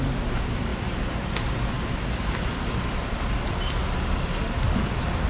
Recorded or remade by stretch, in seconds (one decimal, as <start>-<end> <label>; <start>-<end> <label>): 0.0-0.7 recorded; 0.7-3.9 remade; 3.9-5.3 recorded